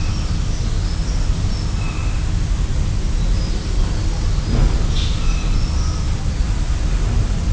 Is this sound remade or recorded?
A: recorded